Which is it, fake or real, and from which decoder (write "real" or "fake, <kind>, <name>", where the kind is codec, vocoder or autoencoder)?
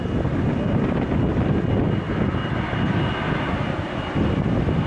real